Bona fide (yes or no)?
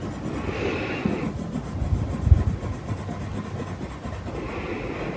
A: yes